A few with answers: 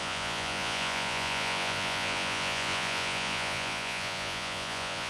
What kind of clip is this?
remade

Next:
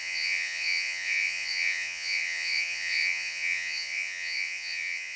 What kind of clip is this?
remade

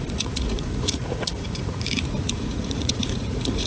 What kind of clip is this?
remade